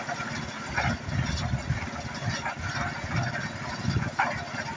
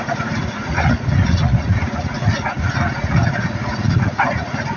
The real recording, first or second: first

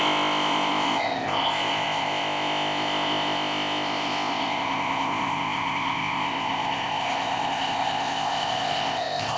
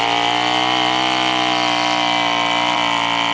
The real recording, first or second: second